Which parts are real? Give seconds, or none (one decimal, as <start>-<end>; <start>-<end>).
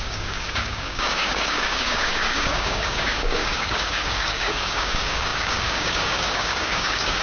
none